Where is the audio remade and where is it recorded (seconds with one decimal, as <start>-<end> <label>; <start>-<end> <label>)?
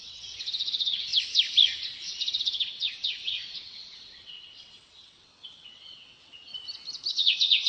0.0-1.1 remade; 1.1-2.0 recorded; 2.0-6.5 remade; 6.5-7.1 recorded; 7.1-7.7 remade